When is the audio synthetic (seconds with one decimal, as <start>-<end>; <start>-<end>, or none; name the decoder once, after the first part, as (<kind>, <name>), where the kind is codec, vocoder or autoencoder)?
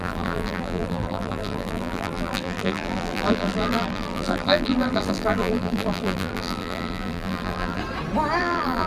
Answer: 0.0-7.8 (vocoder, BigVGAN v2); 8.4-8.9